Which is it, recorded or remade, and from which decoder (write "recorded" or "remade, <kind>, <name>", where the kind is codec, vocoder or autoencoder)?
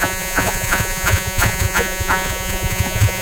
remade, vocoder, Vocos